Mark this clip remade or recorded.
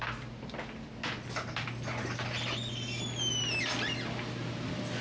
recorded